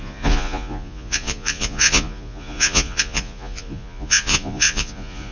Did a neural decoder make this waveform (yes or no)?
yes